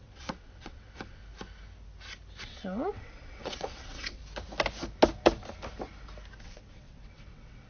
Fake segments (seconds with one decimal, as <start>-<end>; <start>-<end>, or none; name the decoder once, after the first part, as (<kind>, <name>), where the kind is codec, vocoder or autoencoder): 0.0-1.2 (vocoder, WaveNeXt); 2.4-4.2; 6.4-7.7